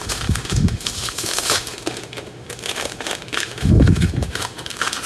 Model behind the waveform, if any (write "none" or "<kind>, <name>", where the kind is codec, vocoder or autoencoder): autoencoder, DAC-VAE